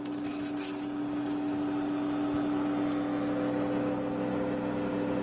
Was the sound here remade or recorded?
recorded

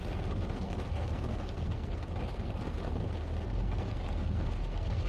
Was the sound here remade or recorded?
remade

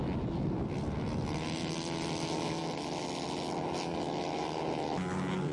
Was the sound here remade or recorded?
recorded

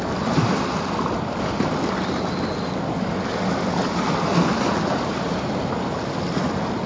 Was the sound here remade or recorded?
recorded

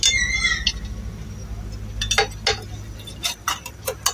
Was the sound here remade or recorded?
recorded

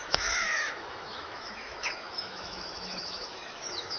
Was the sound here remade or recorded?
remade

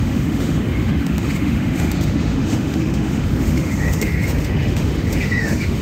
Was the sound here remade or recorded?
remade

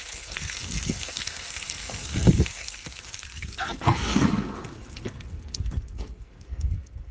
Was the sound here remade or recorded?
remade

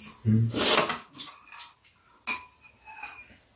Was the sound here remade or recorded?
recorded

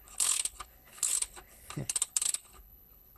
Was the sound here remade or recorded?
remade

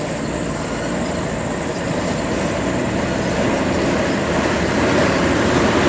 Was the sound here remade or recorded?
recorded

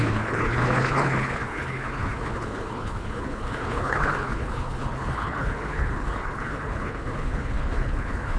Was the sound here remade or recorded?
remade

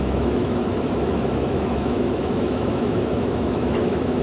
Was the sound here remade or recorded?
remade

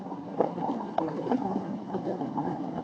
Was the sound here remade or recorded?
remade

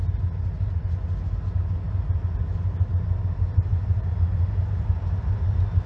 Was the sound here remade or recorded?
recorded